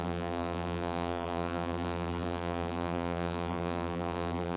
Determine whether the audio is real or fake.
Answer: fake